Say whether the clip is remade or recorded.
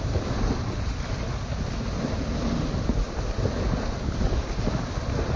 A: recorded